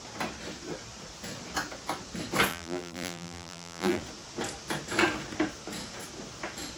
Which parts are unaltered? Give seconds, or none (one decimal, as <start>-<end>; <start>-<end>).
0.0-2.5; 4.0-6.8